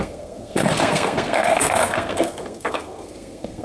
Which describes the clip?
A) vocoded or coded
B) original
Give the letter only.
A